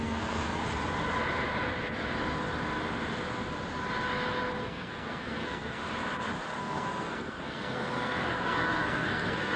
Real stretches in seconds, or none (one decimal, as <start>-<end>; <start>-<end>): 0.6-4.6; 5.8-6.6